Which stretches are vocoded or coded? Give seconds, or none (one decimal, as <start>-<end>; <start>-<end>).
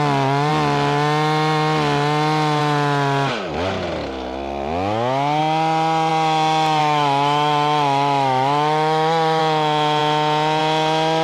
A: 6.8-9.4